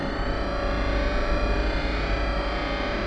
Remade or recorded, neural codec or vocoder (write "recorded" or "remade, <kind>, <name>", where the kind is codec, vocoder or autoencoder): recorded